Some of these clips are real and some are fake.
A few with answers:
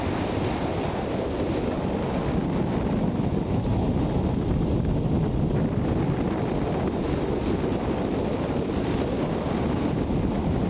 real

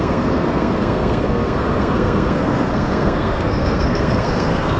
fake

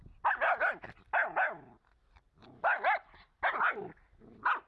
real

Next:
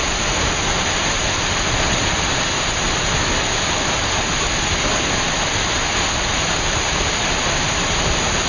real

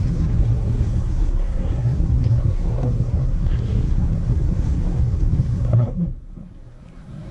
fake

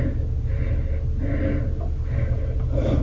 real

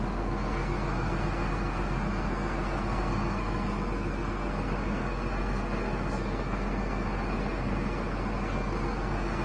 fake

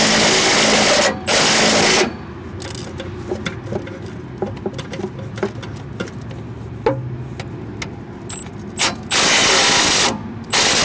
real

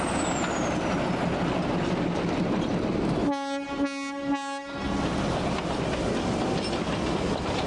real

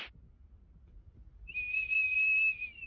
real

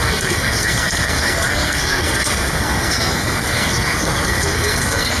fake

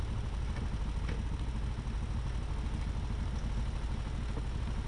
real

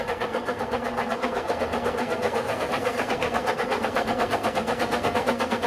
fake